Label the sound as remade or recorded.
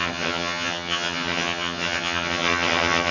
remade